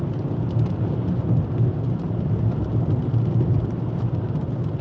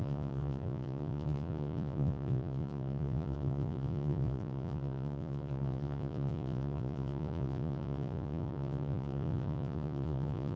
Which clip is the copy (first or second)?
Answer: second